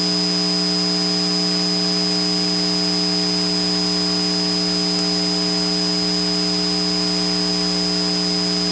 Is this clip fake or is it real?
real